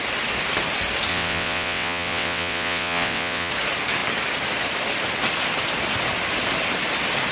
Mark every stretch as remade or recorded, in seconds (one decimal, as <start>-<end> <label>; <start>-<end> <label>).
0.0-1.1 recorded; 1.1-3.5 remade; 3.5-7.3 recorded